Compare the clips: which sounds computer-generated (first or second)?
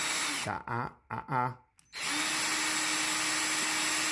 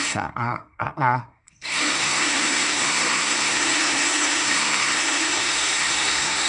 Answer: second